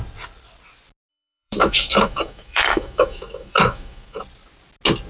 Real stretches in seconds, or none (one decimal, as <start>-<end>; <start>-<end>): 0.0-1.1; 4.2-5.1